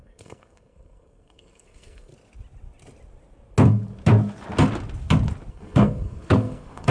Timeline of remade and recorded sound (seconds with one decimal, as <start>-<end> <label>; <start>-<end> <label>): 0.0-2.1 remade; 2.1-5.5 recorded; 5.5-6.9 remade